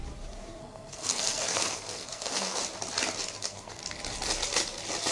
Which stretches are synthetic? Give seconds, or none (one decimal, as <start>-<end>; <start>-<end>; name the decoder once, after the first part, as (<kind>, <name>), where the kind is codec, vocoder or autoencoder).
0.6-2.6 (codec, SNAC); 3.4-3.8

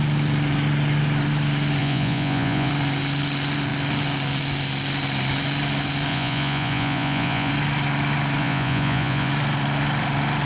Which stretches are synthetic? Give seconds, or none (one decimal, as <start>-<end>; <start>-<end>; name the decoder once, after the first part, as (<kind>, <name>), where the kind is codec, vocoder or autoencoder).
1.8-2.7 (vocoder, Vocos); 6.1-7.5; 8.4-9.3